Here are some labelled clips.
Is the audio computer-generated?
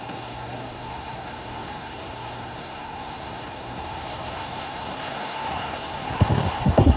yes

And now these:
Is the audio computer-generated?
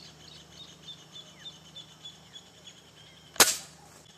no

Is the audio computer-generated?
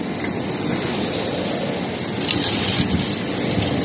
no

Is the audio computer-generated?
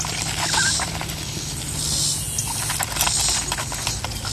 no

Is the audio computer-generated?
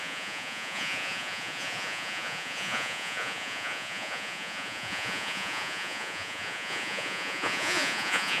yes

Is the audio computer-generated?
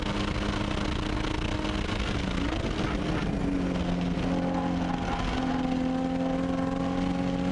no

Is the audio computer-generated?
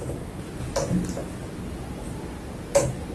no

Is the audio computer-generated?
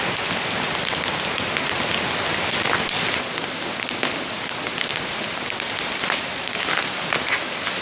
no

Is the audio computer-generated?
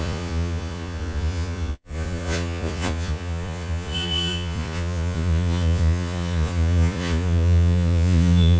yes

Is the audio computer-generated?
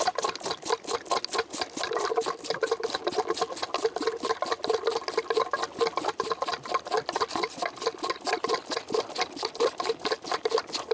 no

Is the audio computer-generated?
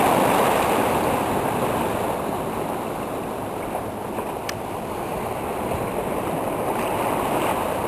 no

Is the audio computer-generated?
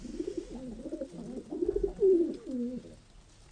no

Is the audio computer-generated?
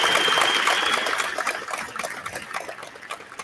no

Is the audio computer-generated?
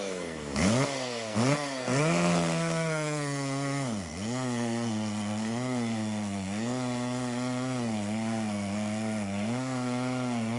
yes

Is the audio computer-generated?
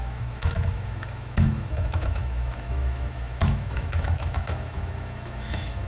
yes